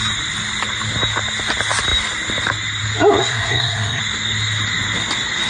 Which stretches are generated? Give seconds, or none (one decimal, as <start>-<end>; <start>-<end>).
3.2-4.0

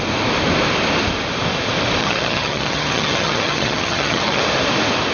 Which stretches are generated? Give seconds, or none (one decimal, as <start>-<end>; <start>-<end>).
2.0-4.4

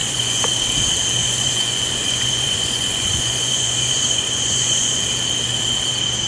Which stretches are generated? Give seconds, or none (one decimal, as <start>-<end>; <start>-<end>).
0.0-0.5; 1.2-5.0

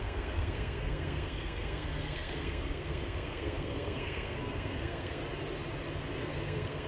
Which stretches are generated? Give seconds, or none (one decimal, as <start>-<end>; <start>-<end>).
0.0-5.2; 6.2-6.9

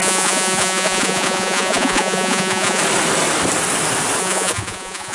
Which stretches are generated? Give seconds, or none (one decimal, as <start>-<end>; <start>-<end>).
0.0-2.8; 4.2-5.1

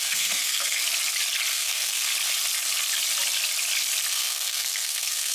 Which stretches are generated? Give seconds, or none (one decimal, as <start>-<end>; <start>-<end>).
0.0-0.8; 1.5-2.1; 4.1-5.3

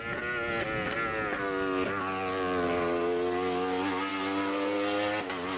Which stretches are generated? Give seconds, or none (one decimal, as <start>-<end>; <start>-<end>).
none